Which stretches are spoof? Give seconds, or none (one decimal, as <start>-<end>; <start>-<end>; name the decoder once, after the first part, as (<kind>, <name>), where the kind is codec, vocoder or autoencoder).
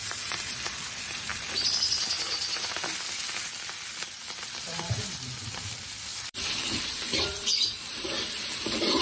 0.0-1.3 (vocoder, BigVGAN v2); 4.0-9.0